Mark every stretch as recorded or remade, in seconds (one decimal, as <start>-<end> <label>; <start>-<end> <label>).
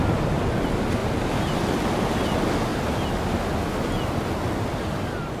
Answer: 0.0-1.0 recorded; 1.0-1.6 remade; 1.6-2.7 recorded; 2.7-3.3 remade; 3.3-5.4 recorded